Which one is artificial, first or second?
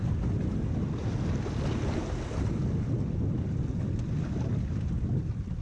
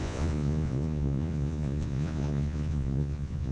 second